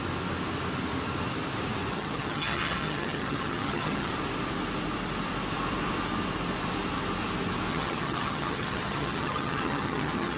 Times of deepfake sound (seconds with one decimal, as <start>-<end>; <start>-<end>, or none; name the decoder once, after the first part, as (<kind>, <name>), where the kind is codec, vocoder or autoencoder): 1.9-4.1 (vocoder, HiFi-GAN); 7.7-10.4

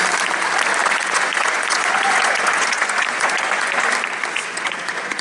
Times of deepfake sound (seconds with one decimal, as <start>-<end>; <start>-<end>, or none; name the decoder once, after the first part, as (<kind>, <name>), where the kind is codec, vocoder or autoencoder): 0.8-3.9 (vocoder, Vocos); 4.4-5.2

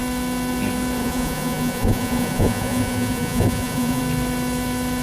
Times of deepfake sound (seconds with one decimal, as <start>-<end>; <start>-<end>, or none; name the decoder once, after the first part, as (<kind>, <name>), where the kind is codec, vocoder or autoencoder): 1.0-4.0 (vocoder, Vocos)

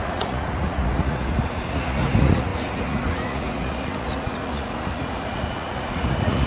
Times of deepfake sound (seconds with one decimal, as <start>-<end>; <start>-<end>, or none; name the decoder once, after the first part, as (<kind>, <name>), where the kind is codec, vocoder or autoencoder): 0.0-6.5 (vocoder, Vocos)

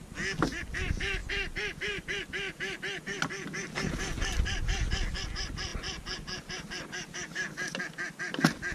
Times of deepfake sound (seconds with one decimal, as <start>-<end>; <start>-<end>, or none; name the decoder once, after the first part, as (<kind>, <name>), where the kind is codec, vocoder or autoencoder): none